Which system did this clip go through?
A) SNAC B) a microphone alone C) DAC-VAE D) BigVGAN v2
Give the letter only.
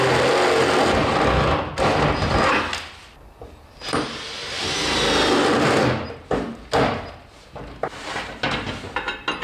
B